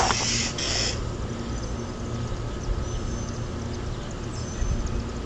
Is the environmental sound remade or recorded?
recorded